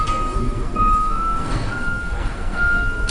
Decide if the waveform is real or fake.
fake